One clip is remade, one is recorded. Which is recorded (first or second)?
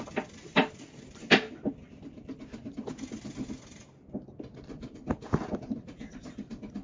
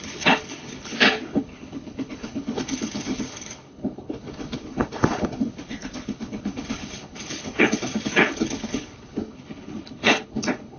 first